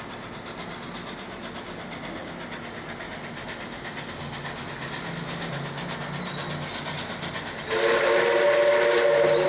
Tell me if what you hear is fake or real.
real